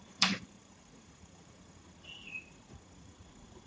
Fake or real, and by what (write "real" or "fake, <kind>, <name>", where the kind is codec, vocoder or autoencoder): fake, vocoder, Vocos